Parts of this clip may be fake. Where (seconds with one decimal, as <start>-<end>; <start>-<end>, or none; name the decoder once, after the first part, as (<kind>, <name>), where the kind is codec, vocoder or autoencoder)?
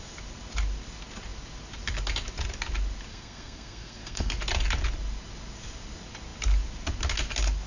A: 3.1-4.3 (codec, SNAC)